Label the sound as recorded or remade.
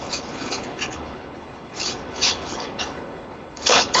remade